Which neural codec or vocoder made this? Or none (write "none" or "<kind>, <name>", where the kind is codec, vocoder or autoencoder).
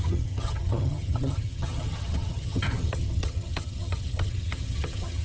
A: vocoder, HiFi-GAN